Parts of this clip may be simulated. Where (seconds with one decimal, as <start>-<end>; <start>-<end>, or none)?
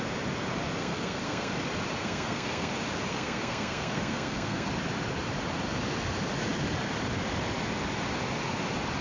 0.8-1.5; 2.0-2.7; 3.1-4.7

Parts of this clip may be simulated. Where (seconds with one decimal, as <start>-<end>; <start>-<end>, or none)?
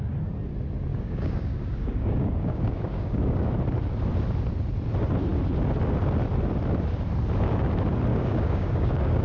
0.9-3.5; 8.1-9.2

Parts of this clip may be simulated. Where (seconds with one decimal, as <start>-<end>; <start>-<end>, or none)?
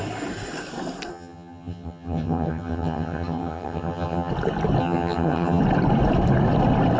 1.1-4.3; 4.8-5.6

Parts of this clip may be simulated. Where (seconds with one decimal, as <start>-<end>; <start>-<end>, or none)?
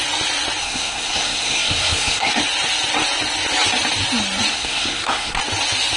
0.6-2.3; 4.5-5.4